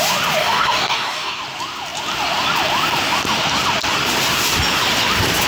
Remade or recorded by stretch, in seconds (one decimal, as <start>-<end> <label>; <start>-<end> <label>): 0.0-0.4 recorded; 0.4-1.4 remade; 1.4-5.5 recorded